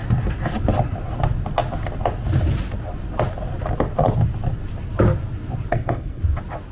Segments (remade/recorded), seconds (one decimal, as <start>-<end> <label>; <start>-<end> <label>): 0.0-5.7 recorded; 5.7-6.2 remade; 6.2-6.7 recorded